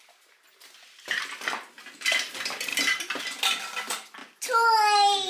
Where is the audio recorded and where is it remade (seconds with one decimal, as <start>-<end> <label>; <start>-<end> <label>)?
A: 0.0-2.7 recorded; 2.7-3.2 remade; 3.2-4.2 recorded; 4.2-5.3 remade